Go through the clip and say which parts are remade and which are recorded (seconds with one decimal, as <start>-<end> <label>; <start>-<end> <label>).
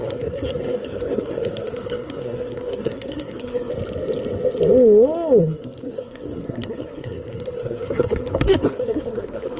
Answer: 0.0-3.7 remade; 3.7-5.4 recorded; 5.4-9.6 remade